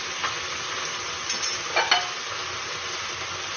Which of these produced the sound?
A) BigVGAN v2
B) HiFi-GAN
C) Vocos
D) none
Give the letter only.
D